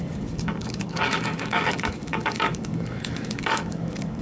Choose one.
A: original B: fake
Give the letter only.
B